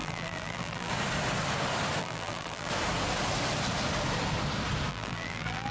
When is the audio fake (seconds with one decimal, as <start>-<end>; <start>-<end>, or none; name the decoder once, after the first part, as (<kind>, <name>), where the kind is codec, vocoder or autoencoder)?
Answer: 0.0-0.9 (vocoder, BigVGAN v2); 2.0-2.7; 4.9-5.7